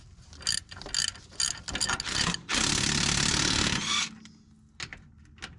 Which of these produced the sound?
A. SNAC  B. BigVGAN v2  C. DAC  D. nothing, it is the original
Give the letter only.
D